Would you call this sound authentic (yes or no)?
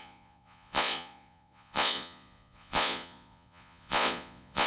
no